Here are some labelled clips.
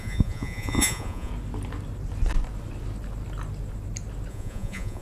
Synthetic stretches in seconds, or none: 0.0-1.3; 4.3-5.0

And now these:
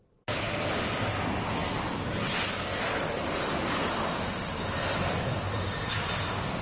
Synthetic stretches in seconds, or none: none

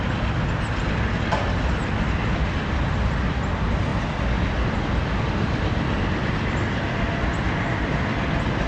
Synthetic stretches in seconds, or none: none

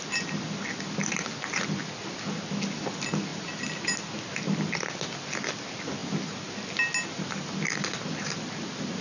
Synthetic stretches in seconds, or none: none

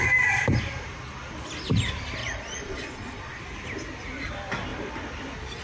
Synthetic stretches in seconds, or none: 2.2-3.4